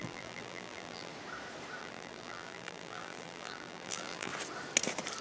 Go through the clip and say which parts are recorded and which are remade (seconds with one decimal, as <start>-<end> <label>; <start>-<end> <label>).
0.0-1.1 remade; 1.1-1.8 recorded; 1.8-4.3 remade; 4.3-5.2 recorded